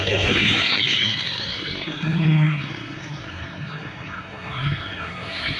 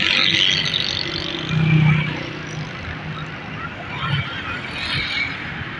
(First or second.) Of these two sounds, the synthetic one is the first